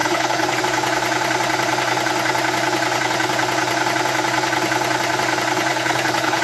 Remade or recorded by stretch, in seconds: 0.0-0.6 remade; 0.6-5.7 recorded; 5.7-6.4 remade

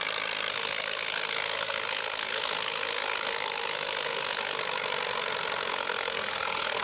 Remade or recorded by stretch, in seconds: 0.0-0.5 recorded; 0.5-4.6 remade; 4.6-5.7 recorded; 5.7-6.8 remade